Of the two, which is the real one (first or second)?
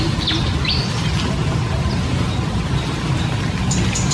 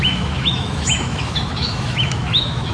first